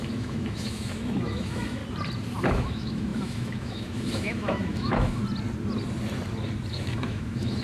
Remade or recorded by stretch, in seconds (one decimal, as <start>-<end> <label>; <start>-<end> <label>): 0.0-1.8 remade; 1.8-2.4 recorded; 2.4-5.2 remade; 5.2-6.7 recorded; 6.7-7.6 remade